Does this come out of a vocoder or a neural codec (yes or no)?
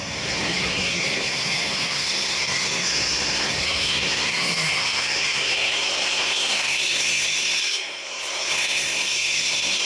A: yes